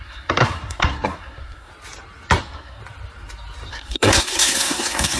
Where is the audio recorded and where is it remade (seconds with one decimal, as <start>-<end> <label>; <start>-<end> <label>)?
0.0-1.7 remade; 1.7-2.4 recorded; 2.4-2.8 remade; 2.8-3.7 recorded; 3.7-5.2 remade